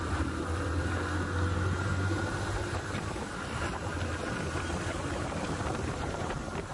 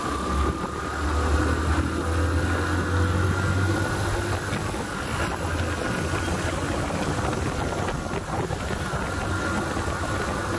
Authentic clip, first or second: second